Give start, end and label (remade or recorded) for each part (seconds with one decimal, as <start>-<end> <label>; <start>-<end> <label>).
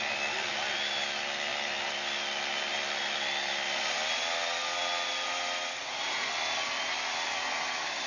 0.0-5.8 recorded; 5.8-6.3 remade; 6.3-8.1 recorded